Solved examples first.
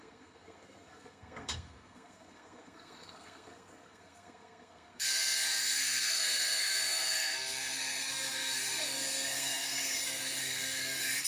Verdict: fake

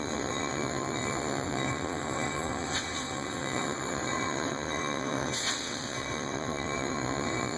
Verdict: fake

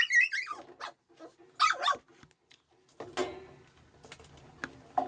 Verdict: real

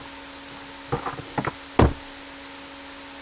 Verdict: real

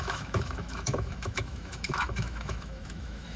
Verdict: fake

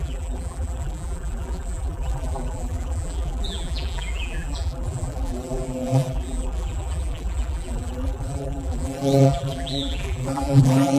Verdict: fake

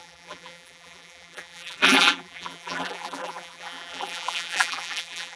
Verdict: fake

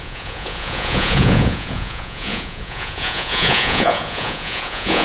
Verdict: fake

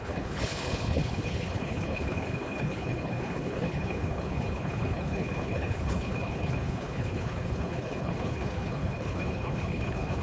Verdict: fake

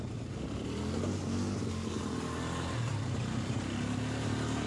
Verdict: real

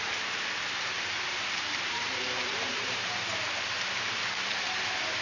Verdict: fake